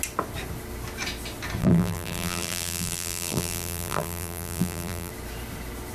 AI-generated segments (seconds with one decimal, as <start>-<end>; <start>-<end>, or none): 1.6-5.1

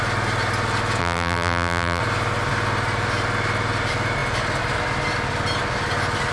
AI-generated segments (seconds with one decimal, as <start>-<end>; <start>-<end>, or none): 1.0-2.0

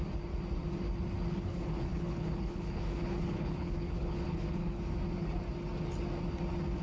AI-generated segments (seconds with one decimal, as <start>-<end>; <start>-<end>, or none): 1.3-4.8

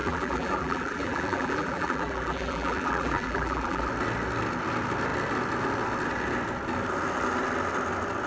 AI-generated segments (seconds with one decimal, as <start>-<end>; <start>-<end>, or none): 0.0-3.9

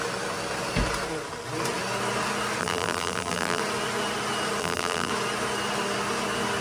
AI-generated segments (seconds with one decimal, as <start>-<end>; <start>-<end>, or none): 2.6-3.6; 4.6-5.1

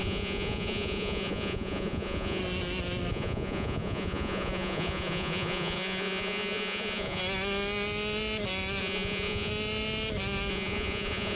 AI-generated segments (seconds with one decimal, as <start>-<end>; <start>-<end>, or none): 0.0-2.4; 3.1-7.2; 8.8-9.5; 10.5-11.4